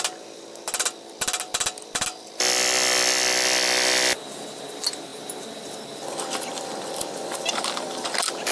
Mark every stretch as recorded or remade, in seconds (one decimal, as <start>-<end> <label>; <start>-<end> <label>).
0.0-8.5 recorded